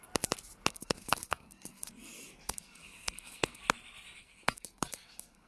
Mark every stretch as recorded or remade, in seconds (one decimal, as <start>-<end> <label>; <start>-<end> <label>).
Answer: 0.0-0.7 recorded; 0.7-3.6 remade; 3.6-4.2 recorded; 4.2-5.5 remade